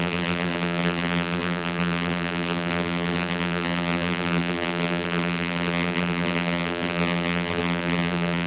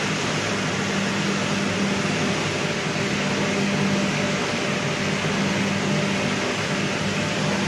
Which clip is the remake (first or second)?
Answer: first